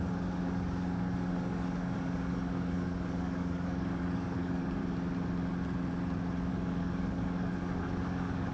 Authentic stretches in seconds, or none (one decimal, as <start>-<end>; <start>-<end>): 4.8-6.5